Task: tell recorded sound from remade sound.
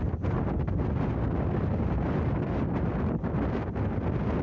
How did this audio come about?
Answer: recorded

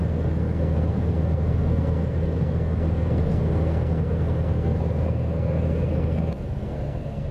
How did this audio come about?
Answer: remade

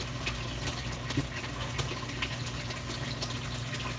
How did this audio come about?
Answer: recorded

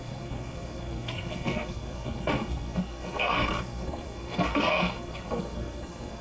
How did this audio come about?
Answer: remade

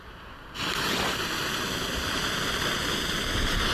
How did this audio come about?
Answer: recorded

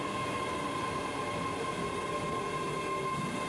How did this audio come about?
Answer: recorded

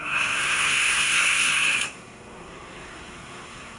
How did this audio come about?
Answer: remade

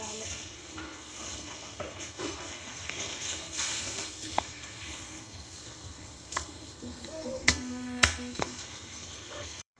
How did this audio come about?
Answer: remade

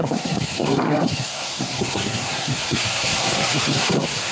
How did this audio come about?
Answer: remade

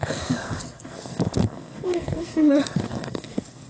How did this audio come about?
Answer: remade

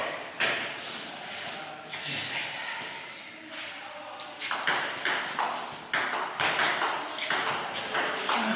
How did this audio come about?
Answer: recorded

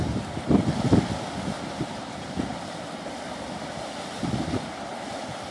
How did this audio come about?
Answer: recorded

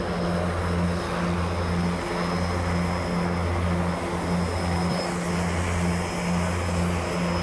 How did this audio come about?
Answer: recorded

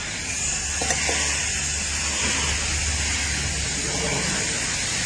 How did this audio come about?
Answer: recorded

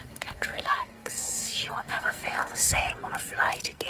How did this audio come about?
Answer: remade